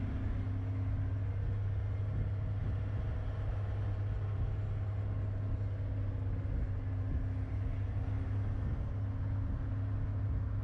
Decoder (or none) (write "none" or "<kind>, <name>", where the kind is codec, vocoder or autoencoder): none